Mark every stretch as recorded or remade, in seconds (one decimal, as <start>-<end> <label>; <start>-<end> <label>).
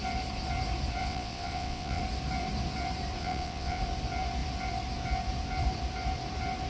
0.0-1.0 recorded; 1.0-2.0 remade; 2.0-3.2 recorded; 3.2-3.8 remade; 3.8-6.7 recorded